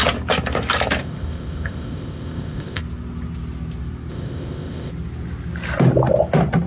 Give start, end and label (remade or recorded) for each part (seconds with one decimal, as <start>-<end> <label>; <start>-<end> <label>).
0.0-1.0 recorded; 1.0-2.8 remade; 2.8-4.1 recorded; 4.1-4.9 remade; 4.9-6.7 recorded